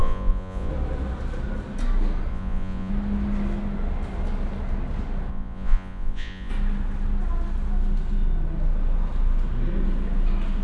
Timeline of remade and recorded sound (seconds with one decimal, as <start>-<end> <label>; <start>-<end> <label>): 0.0-0.7 remade; 0.7-2.3 recorded; 2.3-2.9 remade; 2.9-5.3 recorded; 5.3-6.5 remade; 6.5-10.6 recorded